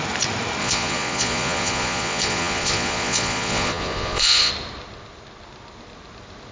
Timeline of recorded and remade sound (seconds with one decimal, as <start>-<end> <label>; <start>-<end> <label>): 0.0-0.6 recorded; 0.6-4.5 remade; 4.5-6.5 recorded